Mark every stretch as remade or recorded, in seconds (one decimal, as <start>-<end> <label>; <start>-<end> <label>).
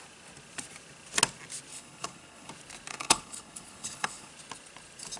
0.0-1.7 recorded; 1.7-2.5 remade; 2.5-2.9 recorded; 2.9-4.3 remade; 4.3-5.2 recorded